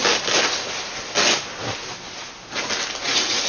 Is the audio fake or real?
real